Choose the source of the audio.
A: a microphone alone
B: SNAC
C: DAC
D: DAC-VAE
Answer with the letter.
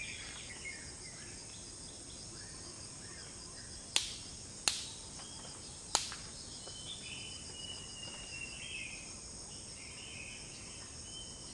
A